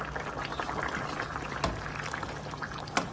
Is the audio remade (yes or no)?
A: no